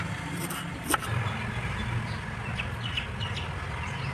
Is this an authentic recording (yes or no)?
yes